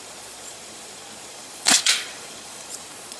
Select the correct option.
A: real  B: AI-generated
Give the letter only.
B